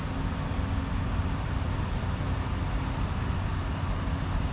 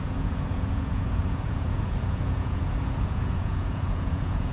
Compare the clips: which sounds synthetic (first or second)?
second